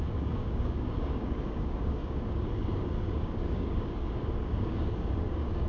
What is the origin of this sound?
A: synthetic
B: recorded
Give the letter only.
A